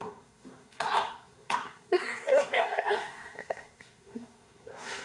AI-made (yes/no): yes